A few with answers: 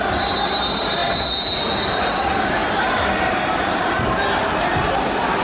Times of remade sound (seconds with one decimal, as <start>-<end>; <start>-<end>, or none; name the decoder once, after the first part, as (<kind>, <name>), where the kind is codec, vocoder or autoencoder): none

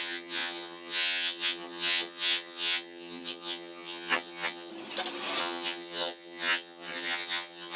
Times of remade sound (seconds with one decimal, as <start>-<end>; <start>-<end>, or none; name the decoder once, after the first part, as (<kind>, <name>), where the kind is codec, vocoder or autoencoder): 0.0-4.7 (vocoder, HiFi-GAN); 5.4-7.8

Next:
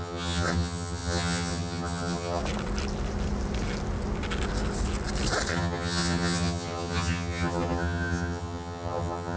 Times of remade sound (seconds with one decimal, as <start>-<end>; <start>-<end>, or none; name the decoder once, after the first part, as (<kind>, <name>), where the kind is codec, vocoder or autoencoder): 0.0-2.4 (vocoder, HiFi-GAN); 5.5-9.4

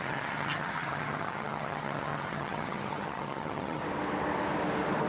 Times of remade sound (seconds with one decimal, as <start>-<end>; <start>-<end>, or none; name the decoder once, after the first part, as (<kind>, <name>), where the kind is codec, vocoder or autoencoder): 0.0-3.8 (vocoder, HiFi-GAN)

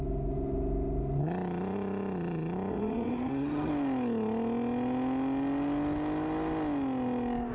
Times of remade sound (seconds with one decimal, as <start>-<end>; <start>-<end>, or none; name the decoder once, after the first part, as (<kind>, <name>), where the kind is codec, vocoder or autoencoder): 2.7-3.7 (vocoder, HiFi-GAN)

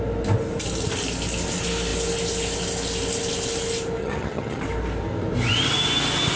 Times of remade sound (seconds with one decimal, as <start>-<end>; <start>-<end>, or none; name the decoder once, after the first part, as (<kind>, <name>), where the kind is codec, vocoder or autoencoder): 4.0-4.6 (vocoder, HiFi-GAN)

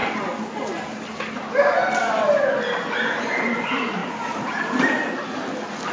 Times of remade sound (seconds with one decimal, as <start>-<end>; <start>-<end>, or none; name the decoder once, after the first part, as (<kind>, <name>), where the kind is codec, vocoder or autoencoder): none

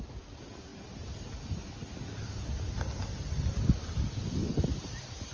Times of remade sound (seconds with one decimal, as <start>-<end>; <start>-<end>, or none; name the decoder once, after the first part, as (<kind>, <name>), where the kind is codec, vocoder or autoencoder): none